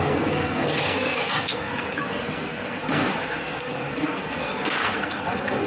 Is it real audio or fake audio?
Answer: fake